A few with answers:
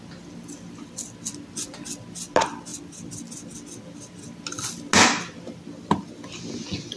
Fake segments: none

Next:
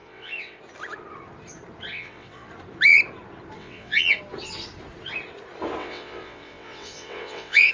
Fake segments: 0.0-0.6 (vocoder, WaveNeXt); 1.9-2.5; 3.6-4.2; 5.8-7.7

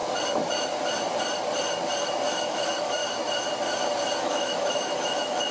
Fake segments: 2.3-3.0 (autoencoder, DAC-VAE); 4.2-5.5

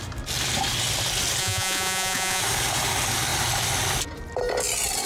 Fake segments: 1.4-2.4 (vocoder, Vocos)